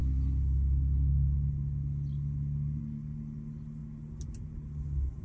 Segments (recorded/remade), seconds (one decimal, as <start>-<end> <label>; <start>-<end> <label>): 0.0-5.2 recorded